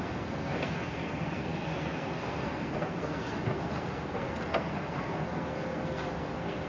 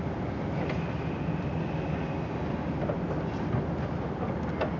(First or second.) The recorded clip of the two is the second